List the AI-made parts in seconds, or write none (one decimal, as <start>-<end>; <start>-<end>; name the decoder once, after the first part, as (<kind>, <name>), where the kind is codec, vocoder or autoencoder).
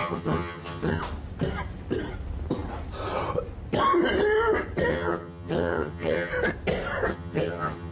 0.0-1.0 (vocoder, HiFi-GAN); 4.9-6.3; 7.1-7.9